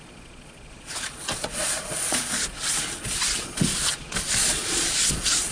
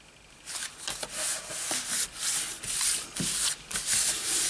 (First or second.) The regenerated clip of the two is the first